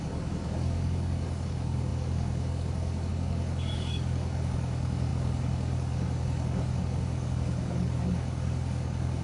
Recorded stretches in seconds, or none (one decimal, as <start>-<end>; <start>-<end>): none